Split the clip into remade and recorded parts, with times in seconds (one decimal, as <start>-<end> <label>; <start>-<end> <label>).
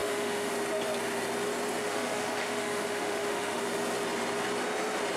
0.0-0.5 remade; 0.5-1.8 recorded; 1.8-3.6 remade; 3.6-5.2 recorded